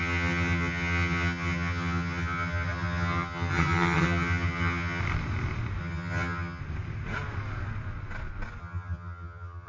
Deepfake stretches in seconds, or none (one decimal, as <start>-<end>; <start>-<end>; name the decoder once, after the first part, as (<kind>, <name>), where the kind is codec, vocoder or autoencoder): 0.0-5.0 (vocoder, HiFi-GAN); 5.8-6.6; 8.6-9.7